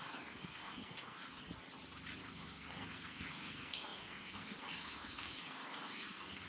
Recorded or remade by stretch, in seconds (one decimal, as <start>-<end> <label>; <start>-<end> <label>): 0.0-1.4 remade; 1.4-2.2 recorded; 2.2-6.5 remade